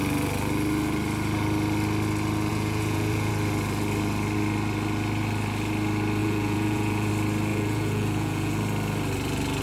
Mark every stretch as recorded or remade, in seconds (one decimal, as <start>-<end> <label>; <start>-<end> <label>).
0.0-2.5 recorded; 2.5-3.3 remade; 3.3-6.2 recorded; 6.2-7.1 remade; 7.1-7.5 recorded; 7.5-8.6 remade; 8.6-9.6 recorded